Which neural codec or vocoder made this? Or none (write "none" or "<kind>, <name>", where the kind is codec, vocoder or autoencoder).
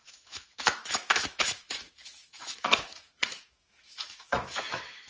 autoencoder, DAC-VAE